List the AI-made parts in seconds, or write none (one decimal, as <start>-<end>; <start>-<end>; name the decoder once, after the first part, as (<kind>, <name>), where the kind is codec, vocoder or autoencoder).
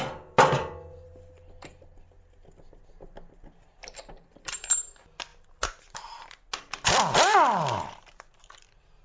none